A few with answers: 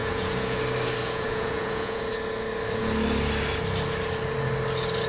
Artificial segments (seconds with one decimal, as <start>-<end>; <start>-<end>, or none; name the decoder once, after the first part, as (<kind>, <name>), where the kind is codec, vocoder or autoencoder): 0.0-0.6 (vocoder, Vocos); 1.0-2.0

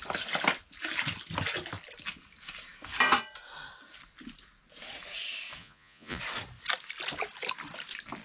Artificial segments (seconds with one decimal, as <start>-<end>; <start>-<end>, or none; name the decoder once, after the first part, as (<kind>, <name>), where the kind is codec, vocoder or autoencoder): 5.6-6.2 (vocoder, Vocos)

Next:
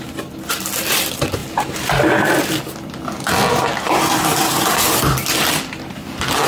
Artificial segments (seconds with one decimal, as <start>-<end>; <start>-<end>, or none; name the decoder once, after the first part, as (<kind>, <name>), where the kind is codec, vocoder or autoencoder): none

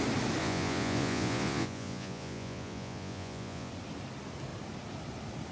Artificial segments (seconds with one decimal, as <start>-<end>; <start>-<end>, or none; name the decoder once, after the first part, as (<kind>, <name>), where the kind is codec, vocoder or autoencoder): 0.4-3.7 (vocoder, Vocos)